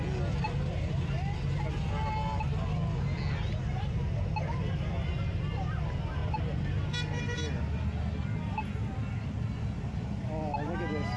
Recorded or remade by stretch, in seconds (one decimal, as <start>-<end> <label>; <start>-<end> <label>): 0.0-11.2 recorded